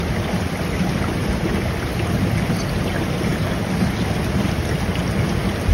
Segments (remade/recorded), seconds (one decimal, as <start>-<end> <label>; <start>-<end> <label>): 0.0-5.7 recorded